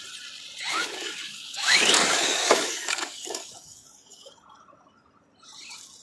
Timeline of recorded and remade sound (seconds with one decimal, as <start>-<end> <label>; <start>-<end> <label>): 0.0-0.7 recorded; 0.7-4.3 remade; 4.3-6.0 recorded